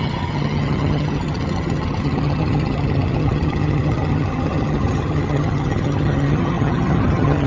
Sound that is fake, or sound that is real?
fake